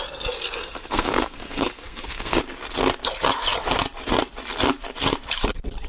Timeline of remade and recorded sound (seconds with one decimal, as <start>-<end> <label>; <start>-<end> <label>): 0.0-0.6 recorded; 0.6-2.4 remade; 2.4-5.9 recorded